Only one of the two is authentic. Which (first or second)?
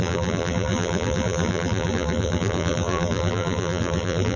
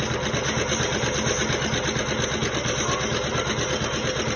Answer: second